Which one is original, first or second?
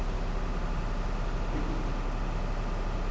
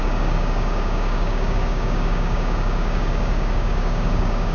first